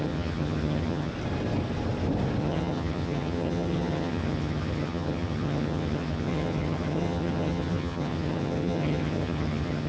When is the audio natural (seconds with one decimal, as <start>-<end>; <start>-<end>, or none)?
1.1-2.4